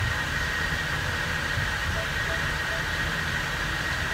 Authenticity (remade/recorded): recorded